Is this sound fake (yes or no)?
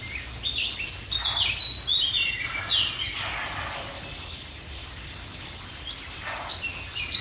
no